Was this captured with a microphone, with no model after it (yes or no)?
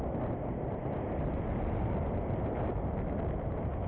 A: yes